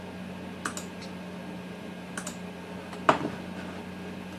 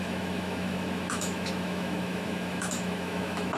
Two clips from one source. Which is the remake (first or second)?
second